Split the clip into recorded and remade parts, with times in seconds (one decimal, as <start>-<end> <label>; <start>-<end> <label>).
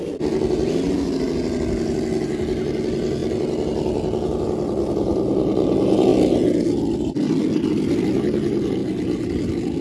0.0-9.8 recorded